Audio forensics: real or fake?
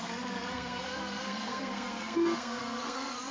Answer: fake